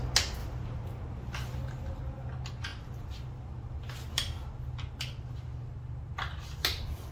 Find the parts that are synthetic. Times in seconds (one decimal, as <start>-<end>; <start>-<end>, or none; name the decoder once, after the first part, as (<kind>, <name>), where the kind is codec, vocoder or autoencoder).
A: 0.4-1.0 (vocoder, BigVGAN v2)